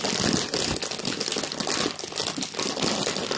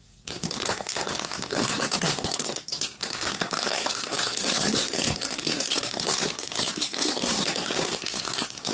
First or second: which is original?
first